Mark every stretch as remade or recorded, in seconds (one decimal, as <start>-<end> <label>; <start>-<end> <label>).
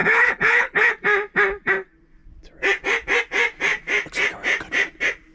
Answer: 0.0-0.9 remade; 0.9-5.3 recorded